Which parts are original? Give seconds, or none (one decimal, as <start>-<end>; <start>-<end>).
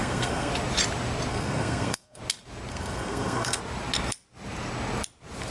0.5-1.3; 2.2-2.7; 3.6-5.5